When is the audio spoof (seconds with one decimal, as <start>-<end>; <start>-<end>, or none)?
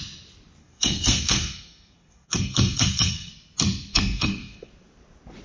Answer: 0.6-3.3; 3.9-4.7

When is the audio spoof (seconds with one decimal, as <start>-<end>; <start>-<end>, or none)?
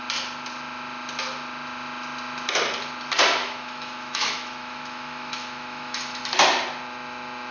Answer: 3.4-6.2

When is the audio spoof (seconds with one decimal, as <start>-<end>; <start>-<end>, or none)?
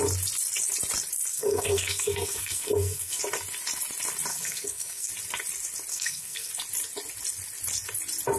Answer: 1.3-3.2; 4.3-5.1; 5.9-6.5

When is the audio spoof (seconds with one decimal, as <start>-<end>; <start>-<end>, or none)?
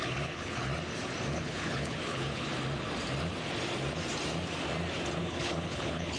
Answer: 0.0-0.7; 1.3-2.5; 5.2-6.2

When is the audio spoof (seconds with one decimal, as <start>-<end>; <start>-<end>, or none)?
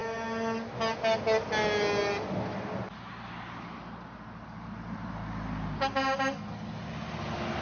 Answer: none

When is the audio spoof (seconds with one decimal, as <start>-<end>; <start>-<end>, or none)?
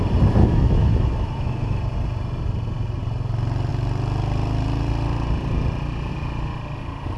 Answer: 0.4-1.8